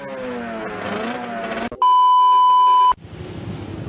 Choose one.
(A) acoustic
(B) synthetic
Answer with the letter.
A